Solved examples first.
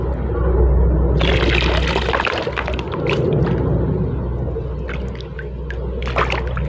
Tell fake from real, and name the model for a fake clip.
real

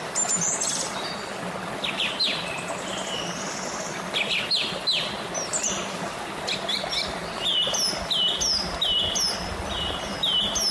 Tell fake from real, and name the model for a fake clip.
real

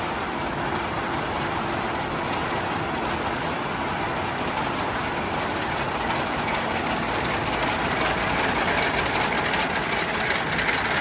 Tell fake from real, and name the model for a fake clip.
real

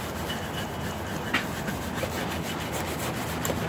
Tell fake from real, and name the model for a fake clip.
real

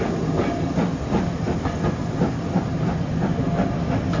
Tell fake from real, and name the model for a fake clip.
real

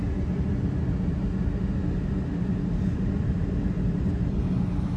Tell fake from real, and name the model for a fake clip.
real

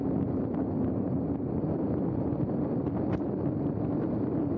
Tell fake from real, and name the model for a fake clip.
real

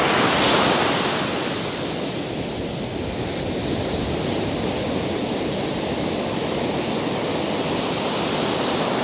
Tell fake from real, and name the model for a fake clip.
real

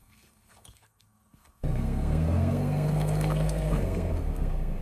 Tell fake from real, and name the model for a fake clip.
fake, codec, SNAC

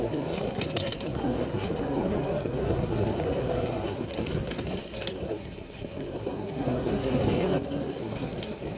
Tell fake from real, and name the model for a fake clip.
fake, codec, SNAC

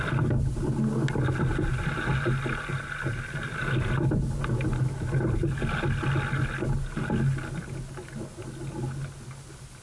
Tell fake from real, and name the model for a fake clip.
real